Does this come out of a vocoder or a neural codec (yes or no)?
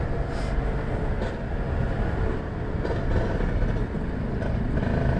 no